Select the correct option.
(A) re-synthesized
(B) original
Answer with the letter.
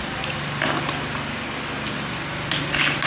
B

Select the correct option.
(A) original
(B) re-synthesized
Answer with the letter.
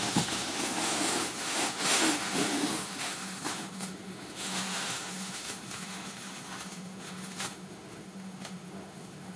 B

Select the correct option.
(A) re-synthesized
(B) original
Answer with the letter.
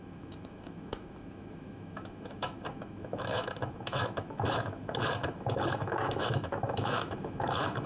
A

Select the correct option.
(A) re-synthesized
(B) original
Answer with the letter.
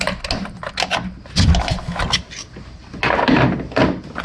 B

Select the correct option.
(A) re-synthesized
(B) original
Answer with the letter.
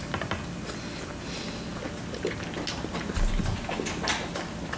B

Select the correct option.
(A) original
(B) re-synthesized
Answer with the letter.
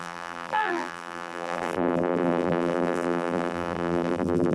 B